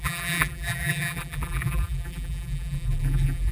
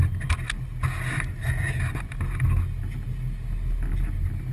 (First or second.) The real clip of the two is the second